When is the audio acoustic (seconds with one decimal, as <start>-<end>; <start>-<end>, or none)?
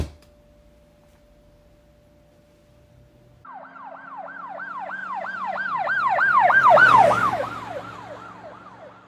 0.0-9.1